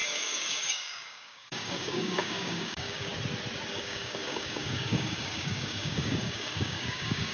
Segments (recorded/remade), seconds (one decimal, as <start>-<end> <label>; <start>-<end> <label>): 0.0-3.1 remade; 3.1-3.7 recorded; 3.7-7.3 remade